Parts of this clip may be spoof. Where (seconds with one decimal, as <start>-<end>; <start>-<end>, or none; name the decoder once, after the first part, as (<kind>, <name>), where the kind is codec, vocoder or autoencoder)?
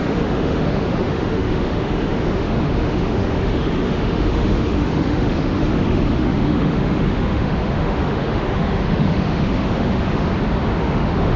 0.0-10.3 (autoencoder, DAC-VAE); 10.8-11.4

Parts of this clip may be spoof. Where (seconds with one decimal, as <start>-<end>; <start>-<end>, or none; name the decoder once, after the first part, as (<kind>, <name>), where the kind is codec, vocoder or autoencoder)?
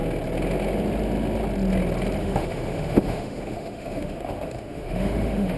2.2-5.6 (autoencoder, DAC-VAE)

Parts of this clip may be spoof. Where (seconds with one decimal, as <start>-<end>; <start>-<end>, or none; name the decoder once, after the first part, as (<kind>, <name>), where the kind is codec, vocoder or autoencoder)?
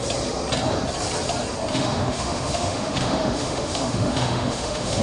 1.7-5.0 (autoencoder, DAC-VAE)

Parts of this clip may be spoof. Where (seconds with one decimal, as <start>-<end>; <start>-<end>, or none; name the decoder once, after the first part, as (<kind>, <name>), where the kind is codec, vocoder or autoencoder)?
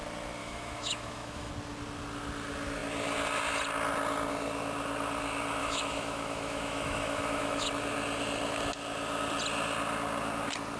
0.4-1.5 (autoencoder, DAC-VAE); 5.6-7.7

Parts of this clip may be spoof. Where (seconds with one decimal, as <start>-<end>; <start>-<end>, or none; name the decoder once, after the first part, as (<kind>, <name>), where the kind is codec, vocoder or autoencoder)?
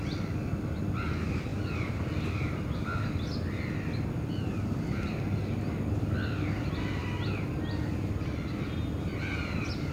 none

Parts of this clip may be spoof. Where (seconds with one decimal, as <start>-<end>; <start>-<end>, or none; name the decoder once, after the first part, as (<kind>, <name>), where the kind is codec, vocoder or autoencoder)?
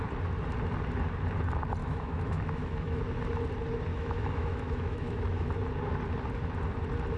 1.8-3.0 (autoencoder, DAC-VAE); 3.9-5.5